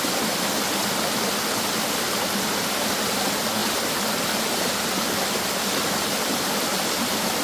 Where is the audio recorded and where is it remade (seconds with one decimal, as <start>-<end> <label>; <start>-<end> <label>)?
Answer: 0.0-7.4 recorded